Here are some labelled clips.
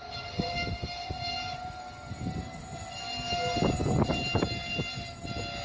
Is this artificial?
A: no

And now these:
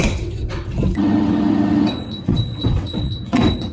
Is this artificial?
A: yes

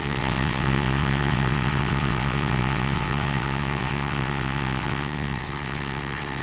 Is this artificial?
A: yes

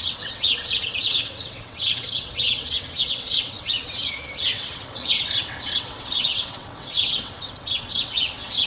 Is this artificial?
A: yes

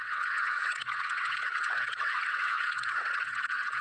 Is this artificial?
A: yes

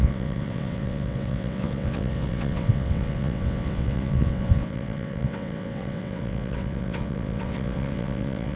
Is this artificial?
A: yes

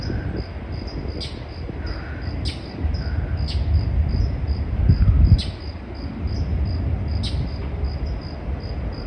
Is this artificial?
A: no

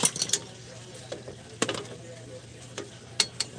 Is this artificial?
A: no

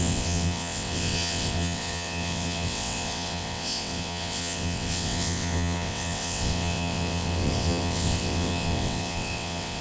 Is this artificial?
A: yes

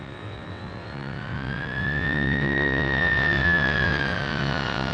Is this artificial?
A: yes